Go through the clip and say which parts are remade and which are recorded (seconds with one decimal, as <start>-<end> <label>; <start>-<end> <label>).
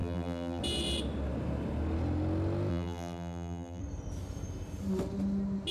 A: 0.0-0.6 remade; 0.6-2.7 recorded; 2.7-3.8 remade; 3.8-5.7 recorded